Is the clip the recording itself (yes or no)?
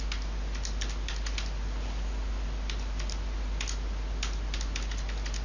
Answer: yes